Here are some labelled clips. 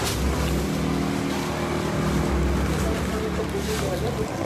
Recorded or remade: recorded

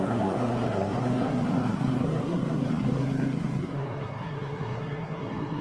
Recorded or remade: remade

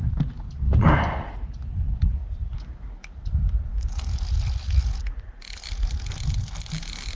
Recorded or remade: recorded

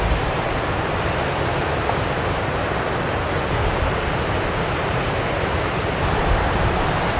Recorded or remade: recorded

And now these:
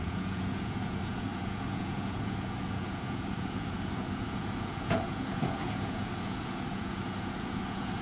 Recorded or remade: remade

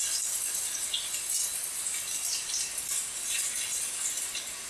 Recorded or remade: recorded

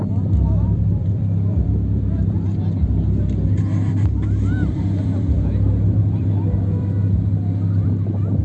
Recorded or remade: remade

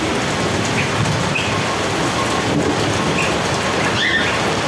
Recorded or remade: recorded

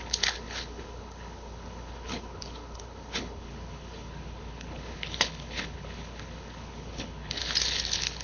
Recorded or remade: remade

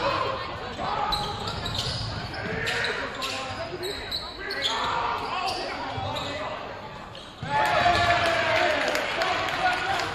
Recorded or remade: recorded